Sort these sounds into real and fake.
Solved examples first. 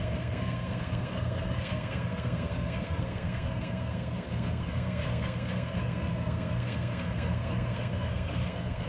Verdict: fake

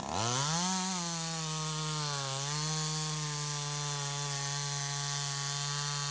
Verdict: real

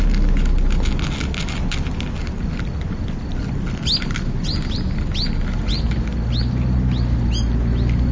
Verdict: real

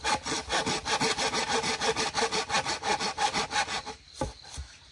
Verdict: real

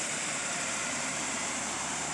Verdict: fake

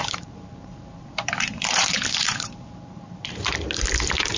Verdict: fake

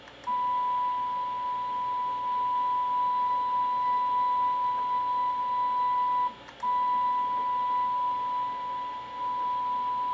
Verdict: real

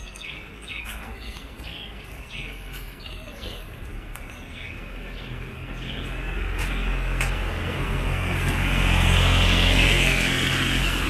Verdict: fake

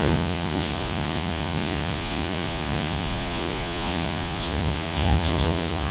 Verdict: fake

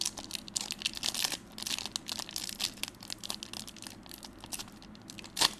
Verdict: real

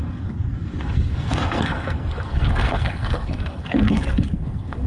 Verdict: fake